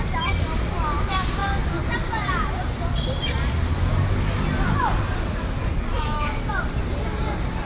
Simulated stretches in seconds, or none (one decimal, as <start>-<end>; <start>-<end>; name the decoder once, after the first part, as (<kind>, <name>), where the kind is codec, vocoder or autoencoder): 5.6-6.4 (codec, DAC)